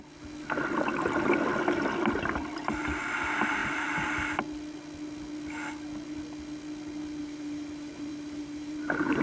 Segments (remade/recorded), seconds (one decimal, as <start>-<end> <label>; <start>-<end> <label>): 0.0-3.6 recorded; 3.6-4.1 remade; 4.1-7.2 recorded; 7.2-9.2 remade